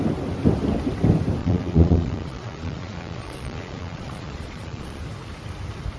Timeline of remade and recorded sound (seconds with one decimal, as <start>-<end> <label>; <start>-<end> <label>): 0.0-1.4 recorded; 1.4-5.0 remade; 5.0-6.0 recorded